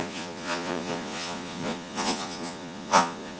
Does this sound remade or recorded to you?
remade